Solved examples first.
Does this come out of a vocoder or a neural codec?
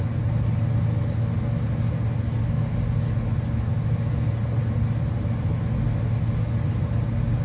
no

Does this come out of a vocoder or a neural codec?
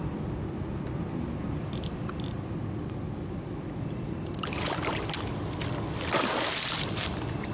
no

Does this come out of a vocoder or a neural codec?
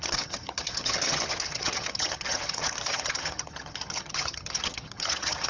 yes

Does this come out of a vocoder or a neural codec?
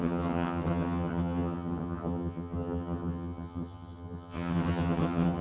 yes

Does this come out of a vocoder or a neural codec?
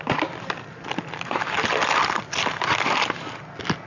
no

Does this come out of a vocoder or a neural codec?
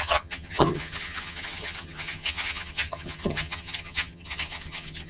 yes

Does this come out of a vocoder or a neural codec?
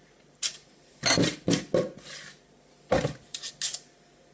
no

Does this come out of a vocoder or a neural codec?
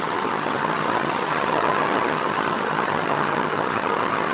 yes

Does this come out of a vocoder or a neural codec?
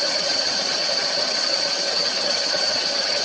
yes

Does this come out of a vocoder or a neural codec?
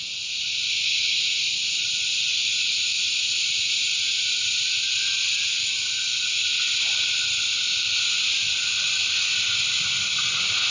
no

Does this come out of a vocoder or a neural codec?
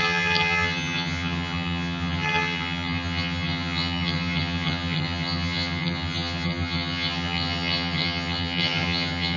yes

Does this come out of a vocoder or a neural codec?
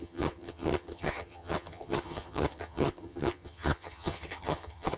yes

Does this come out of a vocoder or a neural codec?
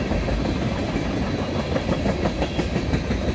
no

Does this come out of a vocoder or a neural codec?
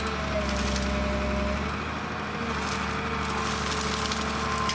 no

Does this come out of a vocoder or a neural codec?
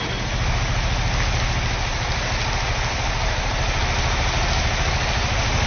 no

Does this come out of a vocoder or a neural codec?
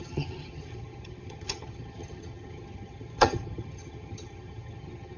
yes